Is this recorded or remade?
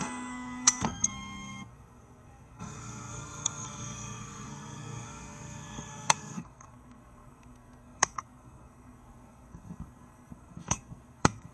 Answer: remade